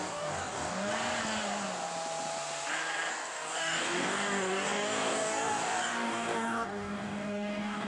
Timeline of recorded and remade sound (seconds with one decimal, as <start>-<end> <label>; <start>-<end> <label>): 0.0-0.9 remade; 0.9-3.1 recorded; 3.1-7.9 remade